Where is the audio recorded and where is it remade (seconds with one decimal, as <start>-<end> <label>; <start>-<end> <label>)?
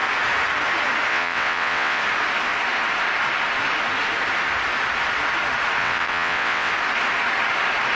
0.0-1.1 recorded; 1.1-2.0 remade; 2.0-5.8 recorded; 5.8-6.7 remade; 6.7-8.0 recorded